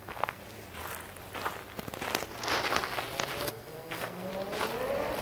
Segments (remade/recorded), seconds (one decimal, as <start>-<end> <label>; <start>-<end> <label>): 0.0-0.4 remade; 0.4-3.5 recorded; 3.5-4.3 remade; 4.3-5.2 recorded